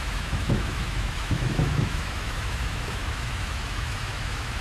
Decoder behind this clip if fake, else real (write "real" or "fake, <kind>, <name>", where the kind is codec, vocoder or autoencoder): fake, autoencoder, DAC-VAE